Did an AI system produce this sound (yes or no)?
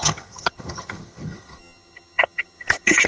yes